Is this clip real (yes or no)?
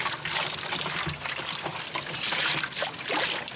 yes